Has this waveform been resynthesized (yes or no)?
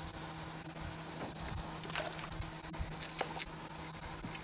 no